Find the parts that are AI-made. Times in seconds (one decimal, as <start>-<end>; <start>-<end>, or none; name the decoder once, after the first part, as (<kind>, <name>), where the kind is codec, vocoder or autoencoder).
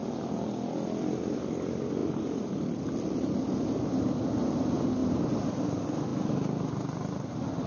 2.0-2.8 (vocoder, BigVGAN v2); 5.0-5.5